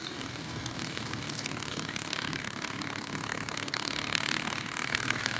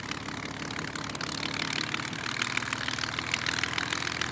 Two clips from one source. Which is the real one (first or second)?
second